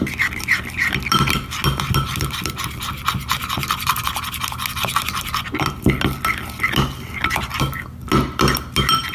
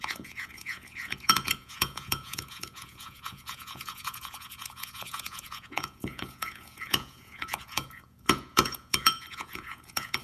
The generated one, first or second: second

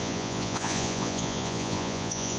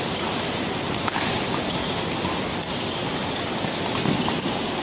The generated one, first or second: first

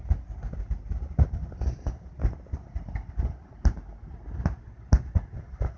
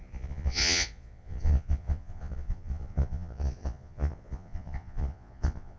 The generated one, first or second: second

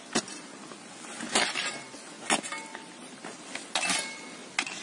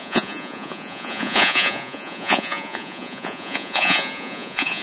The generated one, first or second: second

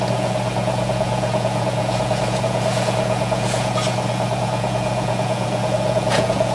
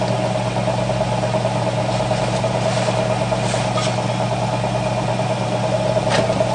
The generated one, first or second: first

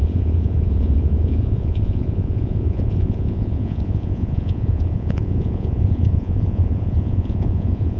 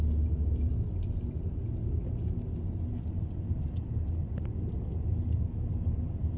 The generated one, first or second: first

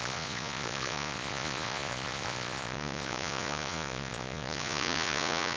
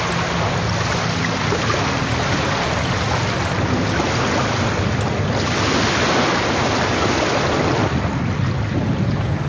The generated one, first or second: first